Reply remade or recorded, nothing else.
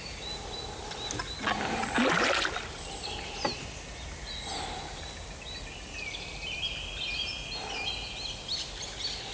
recorded